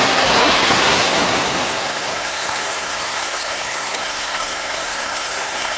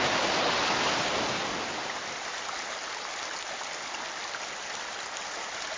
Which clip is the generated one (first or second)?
first